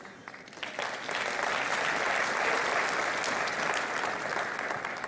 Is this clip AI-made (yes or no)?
no